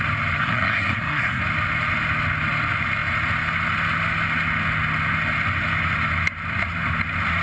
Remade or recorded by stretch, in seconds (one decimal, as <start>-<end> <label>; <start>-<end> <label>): 0.0-0.4 recorded; 0.4-1.4 remade; 1.4-7.4 recorded